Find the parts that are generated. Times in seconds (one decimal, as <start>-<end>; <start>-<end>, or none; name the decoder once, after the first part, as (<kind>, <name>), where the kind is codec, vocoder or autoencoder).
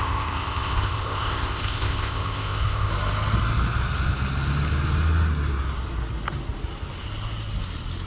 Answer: 0.0-2.9 (codec, ZipCodec)